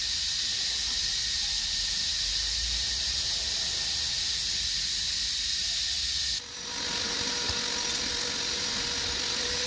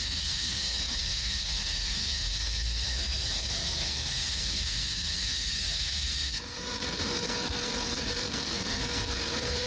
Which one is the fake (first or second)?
second